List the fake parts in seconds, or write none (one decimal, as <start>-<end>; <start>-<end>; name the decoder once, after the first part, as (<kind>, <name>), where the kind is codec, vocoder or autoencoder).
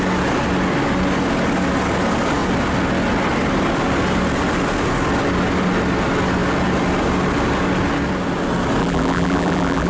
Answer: 8.8-9.9 (vocoder, BigVGAN v2)